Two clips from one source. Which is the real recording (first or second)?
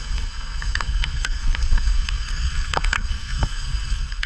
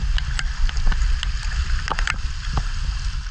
second